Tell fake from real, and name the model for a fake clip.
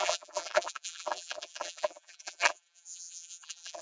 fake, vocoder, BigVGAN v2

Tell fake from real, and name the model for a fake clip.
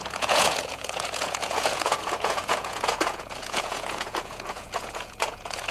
fake, vocoder, Vocos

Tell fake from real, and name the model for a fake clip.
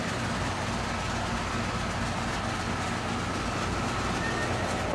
real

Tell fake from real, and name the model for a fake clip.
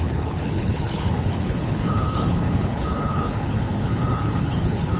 fake, codec, HILCodec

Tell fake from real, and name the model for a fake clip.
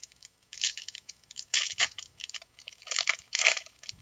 fake, autoencoder, DAC-VAE